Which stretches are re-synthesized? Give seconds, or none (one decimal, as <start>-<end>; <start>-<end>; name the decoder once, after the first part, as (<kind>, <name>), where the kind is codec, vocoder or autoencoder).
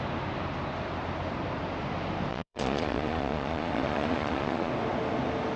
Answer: 2.3-4.7 (vocoder, Vocos)